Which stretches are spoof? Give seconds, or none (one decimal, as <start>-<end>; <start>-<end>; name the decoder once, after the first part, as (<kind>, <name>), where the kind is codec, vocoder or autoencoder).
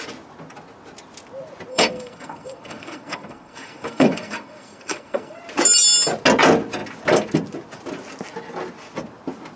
1.7-5.4 (codec, SNAC)